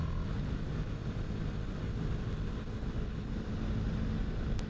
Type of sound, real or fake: real